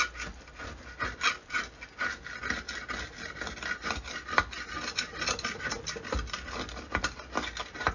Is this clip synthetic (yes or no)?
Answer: no